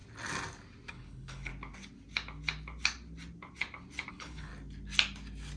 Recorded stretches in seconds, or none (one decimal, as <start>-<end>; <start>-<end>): 0.0-0.9; 1.5-4.1; 4.5-5.6